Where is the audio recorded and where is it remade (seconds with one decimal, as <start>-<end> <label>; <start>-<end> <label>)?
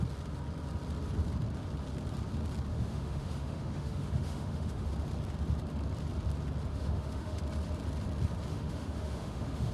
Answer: 0.0-2.7 recorded; 2.7-4.9 remade; 4.9-6.7 recorded; 6.7-7.4 remade; 7.4-8.5 recorded; 8.5-9.7 remade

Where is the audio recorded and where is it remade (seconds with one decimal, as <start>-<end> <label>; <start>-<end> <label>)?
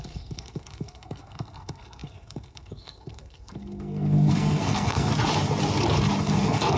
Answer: 0.0-5.1 remade; 5.1-6.2 recorded; 6.2-6.8 remade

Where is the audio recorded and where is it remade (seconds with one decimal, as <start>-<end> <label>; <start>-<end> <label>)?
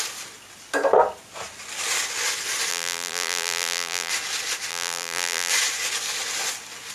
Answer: 0.0-2.7 recorded; 2.7-4.1 remade; 4.1-4.7 recorded; 4.7-5.5 remade; 5.5-6.9 recorded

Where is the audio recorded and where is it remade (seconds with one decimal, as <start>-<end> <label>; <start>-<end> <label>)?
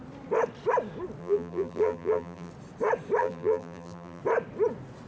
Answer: 0.0-1.2 recorded; 1.2-2.5 remade; 2.5-3.2 recorded; 3.2-4.2 remade; 4.2-5.1 recorded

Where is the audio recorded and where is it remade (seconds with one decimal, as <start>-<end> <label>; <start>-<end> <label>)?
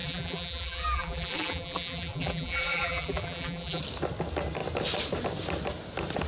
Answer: 0.0-3.8 remade; 3.8-6.3 recorded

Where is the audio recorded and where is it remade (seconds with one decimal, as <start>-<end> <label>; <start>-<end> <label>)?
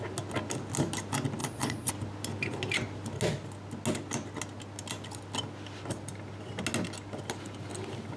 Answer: 0.0-1.4 recorded; 1.4-1.9 remade; 1.9-8.2 recorded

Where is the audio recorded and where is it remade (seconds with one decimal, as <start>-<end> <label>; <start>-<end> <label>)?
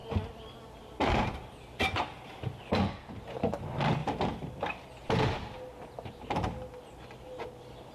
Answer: 0.0-2.0 remade; 2.0-4.0 recorded; 4.0-5.6 remade; 5.6-7.9 recorded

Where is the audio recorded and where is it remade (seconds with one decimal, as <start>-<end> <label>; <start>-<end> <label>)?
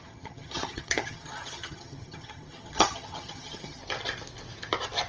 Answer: 0.0-3.8 remade; 3.8-5.1 recorded